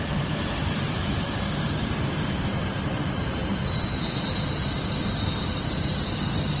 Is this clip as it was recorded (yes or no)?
no